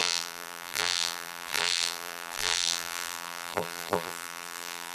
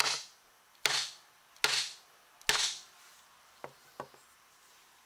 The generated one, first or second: first